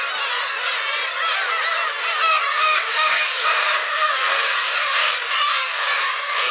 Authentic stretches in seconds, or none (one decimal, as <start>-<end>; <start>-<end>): 0.0-2.3

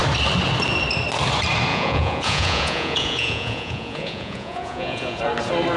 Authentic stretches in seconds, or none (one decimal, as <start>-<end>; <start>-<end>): 0.0-1.7; 5.2-5.8

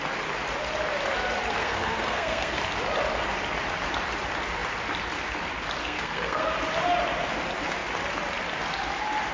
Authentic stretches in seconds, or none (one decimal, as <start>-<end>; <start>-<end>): 0.0-1.6; 2.6-5.8; 6.5-9.3

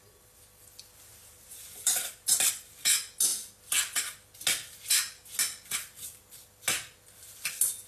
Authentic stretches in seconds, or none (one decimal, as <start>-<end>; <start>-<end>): 0.0-1.1; 2.5-7.9

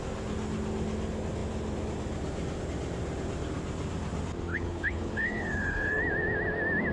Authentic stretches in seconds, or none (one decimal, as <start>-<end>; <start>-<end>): 0.0-4.5; 6.0-6.9

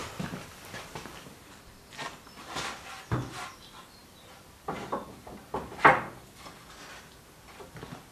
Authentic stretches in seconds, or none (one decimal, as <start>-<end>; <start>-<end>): 1.7-4.0; 5.6-8.1

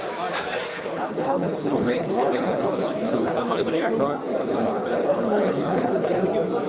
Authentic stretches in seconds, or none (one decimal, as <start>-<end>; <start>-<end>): 0.0-0.7; 3.9-4.4; 6.2-6.7